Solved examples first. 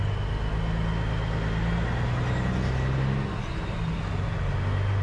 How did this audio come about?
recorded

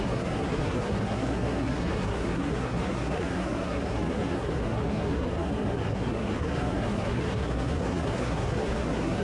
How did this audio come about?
remade